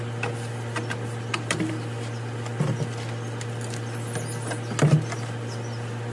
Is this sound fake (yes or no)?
no